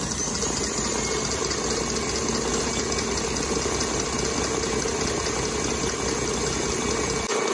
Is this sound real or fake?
real